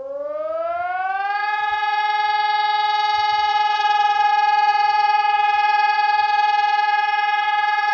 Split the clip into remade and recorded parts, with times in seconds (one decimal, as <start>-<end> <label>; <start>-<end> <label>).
0.0-1.4 recorded; 1.4-2.0 remade; 2.0-3.5 recorded; 3.5-4.3 remade; 4.3-4.7 recorded; 4.7-7.9 remade